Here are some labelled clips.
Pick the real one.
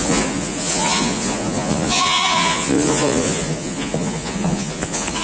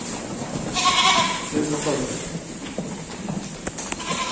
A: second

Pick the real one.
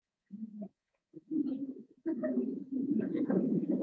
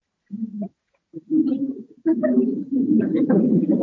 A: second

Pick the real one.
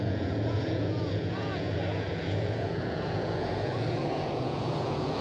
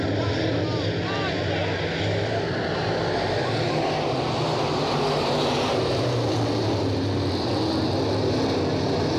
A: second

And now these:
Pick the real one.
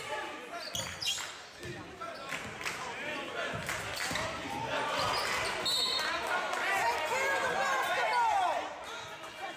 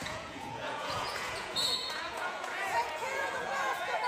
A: first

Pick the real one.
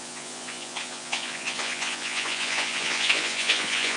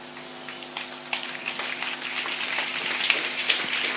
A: second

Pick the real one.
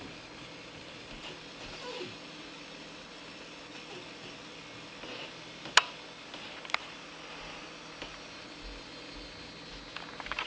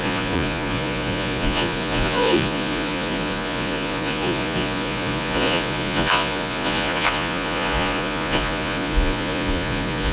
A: first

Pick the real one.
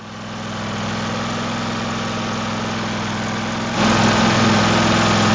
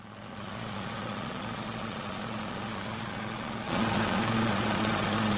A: first